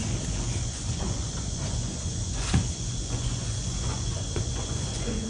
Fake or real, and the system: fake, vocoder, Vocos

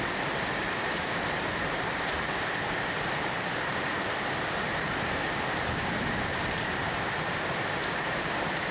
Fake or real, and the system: fake, vocoder, BigVGAN v2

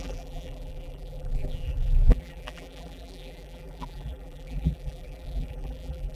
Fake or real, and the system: fake, vocoder, BigVGAN v2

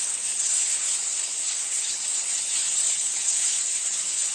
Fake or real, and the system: fake, codec, HILCodec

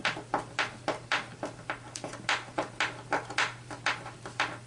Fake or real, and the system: real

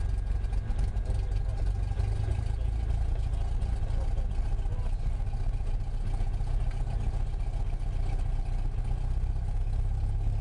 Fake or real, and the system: real